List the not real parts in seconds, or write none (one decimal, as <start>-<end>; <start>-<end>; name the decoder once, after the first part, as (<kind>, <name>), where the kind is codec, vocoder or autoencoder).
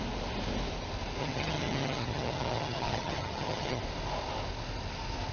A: 1.2-3.8 (vocoder, HiFi-GAN)